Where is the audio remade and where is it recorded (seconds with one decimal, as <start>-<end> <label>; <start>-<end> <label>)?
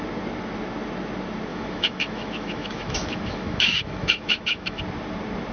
0.0-1.5 recorded; 1.5-4.8 remade; 4.8-5.5 recorded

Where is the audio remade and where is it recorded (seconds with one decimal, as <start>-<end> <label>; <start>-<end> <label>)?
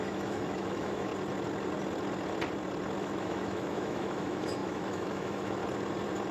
0.0-1.1 remade; 1.1-3.0 recorded; 3.0-5.6 remade; 5.6-6.3 recorded